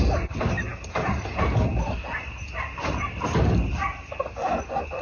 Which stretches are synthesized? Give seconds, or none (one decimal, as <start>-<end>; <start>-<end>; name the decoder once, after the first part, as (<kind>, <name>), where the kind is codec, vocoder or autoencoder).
none